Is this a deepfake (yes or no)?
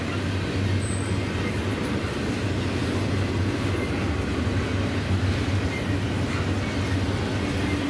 no